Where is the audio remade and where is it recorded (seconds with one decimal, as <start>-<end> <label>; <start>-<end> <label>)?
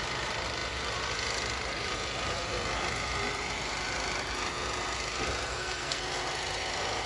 0.0-5.5 recorded; 5.5-6.0 remade; 6.0-7.1 recorded